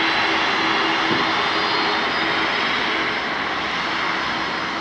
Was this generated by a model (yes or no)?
no